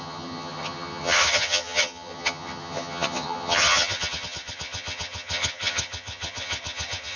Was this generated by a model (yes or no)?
yes